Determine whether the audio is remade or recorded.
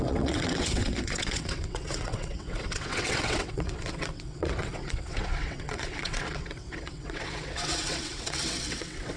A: remade